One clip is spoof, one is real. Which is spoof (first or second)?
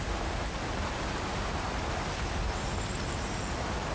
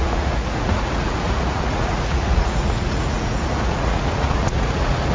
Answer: second